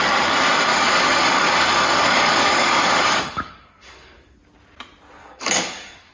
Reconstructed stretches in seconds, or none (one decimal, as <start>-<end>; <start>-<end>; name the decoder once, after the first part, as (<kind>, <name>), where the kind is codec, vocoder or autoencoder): 0.7-4.4 (codec, DAC); 5.2-6.1